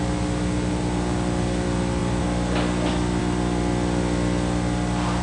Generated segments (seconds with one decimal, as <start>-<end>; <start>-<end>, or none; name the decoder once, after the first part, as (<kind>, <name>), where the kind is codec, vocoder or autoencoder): none